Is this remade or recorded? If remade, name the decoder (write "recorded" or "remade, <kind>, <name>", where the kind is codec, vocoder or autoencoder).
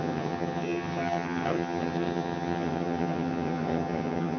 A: remade, vocoder, HiFi-GAN